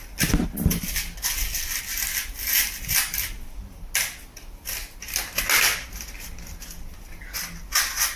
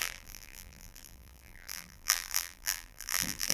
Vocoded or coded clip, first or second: second